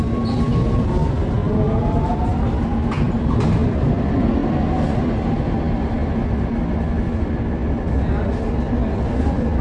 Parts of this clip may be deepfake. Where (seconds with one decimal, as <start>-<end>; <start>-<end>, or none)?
none